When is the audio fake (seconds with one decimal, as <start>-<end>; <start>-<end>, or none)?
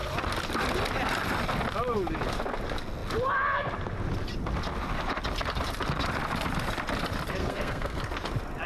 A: 7.4-8.0